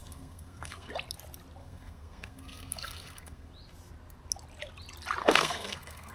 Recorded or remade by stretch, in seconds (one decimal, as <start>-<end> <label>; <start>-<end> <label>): 0.0-0.9 remade; 0.9-1.6 recorded; 1.6-3.5 remade; 3.5-5.2 recorded; 5.2-6.1 remade